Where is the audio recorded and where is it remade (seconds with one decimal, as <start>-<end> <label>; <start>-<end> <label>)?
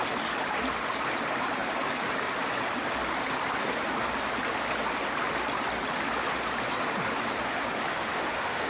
0.0-7.9 recorded; 7.9-8.7 remade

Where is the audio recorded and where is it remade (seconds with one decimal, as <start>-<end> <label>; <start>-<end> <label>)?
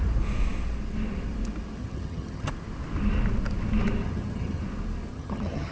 0.0-1.8 recorded; 1.8-2.5 remade; 2.5-4.0 recorded; 4.0-4.6 remade; 4.6-5.1 recorded; 5.1-5.7 remade